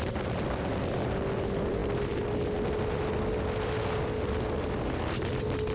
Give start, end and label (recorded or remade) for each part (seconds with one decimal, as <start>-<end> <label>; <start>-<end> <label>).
0.0-5.7 recorded